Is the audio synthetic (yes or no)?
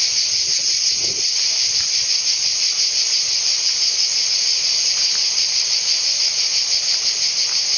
no